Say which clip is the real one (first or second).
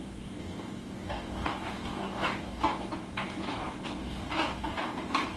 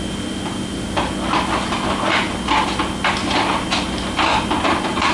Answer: second